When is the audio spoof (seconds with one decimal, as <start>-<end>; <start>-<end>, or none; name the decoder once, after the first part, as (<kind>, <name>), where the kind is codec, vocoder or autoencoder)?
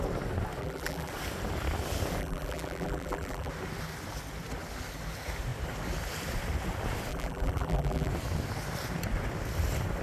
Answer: 0.6-1.1 (vocoder, BigVGAN v2); 2.2-3.5; 7.1-8.1